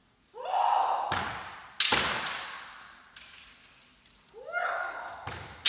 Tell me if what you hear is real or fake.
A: real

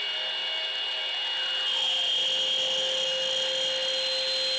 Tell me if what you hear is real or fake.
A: real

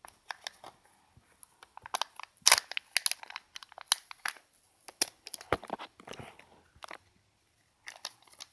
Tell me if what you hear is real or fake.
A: real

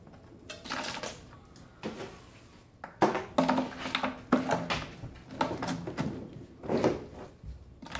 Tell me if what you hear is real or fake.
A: real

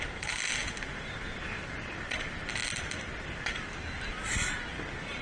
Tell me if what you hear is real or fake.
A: real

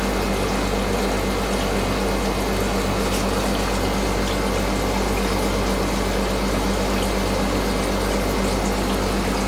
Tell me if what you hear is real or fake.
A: real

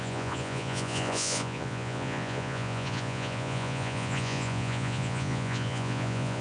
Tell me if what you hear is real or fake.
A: fake